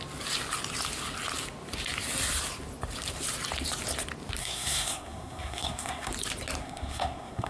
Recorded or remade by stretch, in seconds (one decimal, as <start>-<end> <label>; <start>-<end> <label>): 0.0-4.4 recorded; 4.4-6.1 remade; 6.1-6.6 recorded; 6.6-7.5 remade